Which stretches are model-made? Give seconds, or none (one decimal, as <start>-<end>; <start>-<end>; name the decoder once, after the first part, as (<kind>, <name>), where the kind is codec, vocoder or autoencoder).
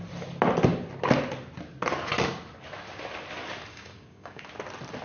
3.7-4.4 (codec, DAC)